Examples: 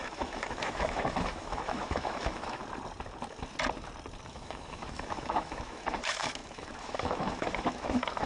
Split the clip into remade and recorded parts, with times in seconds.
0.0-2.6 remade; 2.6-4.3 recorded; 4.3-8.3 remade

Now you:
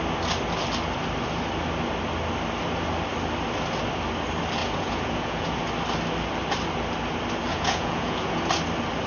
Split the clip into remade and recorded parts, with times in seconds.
0.0-4.6 recorded; 4.6-5.6 remade; 5.6-7.5 recorded; 7.5-8.5 remade; 8.5-9.1 recorded